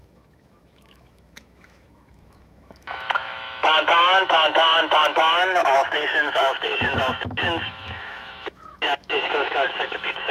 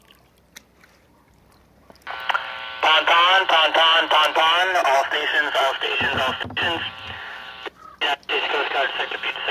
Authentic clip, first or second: second